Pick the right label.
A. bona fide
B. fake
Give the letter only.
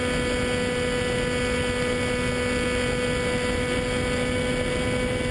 A